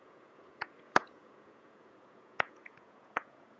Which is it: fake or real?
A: fake